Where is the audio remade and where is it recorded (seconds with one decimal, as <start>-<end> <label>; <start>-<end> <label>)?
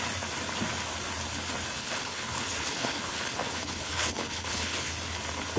0.0-1.8 recorded; 1.8-4.9 remade; 4.9-5.6 recorded